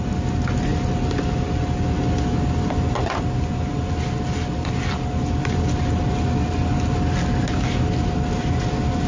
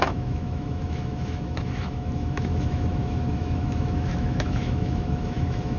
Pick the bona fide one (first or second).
first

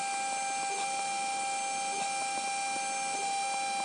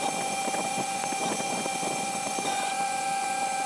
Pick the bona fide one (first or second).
first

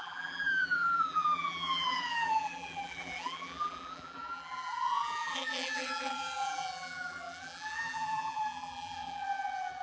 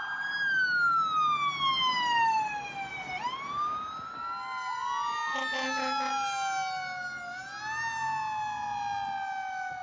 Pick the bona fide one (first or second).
second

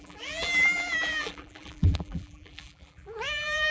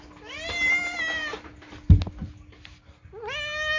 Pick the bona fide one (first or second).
second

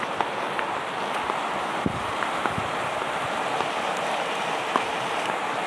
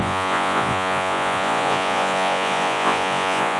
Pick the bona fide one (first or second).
first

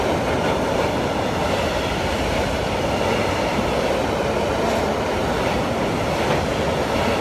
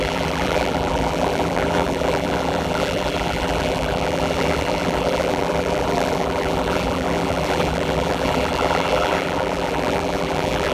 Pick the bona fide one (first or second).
first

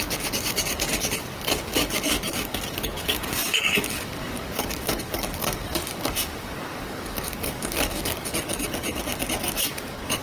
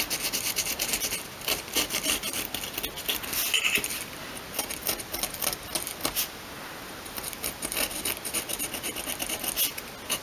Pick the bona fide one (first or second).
second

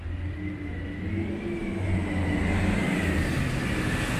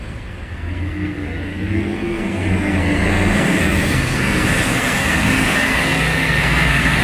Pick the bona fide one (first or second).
first